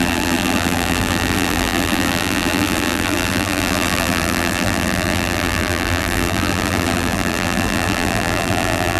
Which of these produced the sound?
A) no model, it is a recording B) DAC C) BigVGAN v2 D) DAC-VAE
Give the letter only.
C